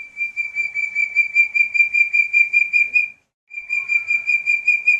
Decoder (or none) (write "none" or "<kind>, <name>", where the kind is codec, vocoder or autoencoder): none